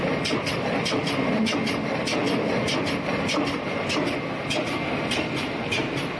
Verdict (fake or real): real